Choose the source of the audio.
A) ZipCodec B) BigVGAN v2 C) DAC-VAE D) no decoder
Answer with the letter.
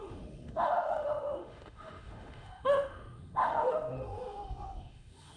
C